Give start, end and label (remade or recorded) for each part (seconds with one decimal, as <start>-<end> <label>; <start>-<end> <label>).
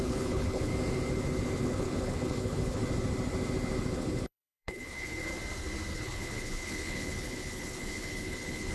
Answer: 0.0-0.7 remade; 0.7-1.6 recorded; 1.6-2.8 remade; 2.8-3.9 recorded; 3.9-5.3 remade; 5.3-5.9 recorded; 5.9-8.7 remade